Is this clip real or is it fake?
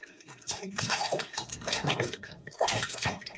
fake